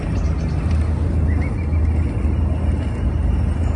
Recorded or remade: recorded